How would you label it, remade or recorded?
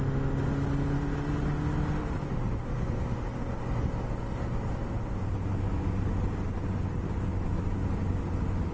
recorded